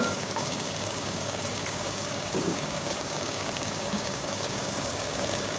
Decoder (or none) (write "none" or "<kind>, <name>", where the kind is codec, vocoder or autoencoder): codec, DAC